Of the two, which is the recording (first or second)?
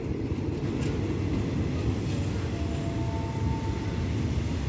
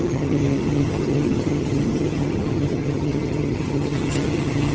first